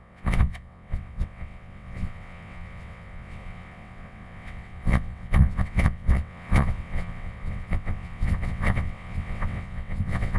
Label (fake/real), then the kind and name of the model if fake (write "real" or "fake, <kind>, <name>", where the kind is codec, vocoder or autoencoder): fake, vocoder, WaveNeXt